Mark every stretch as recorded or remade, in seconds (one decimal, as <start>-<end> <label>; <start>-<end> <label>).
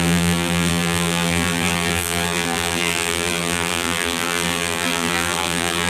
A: 0.0-5.9 remade